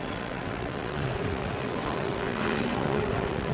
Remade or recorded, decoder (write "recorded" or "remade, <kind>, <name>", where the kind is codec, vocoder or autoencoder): remade, vocoder, WaveNeXt